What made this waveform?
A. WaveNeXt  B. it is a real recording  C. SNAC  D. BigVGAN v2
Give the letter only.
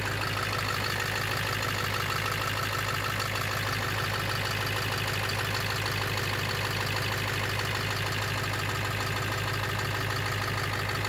B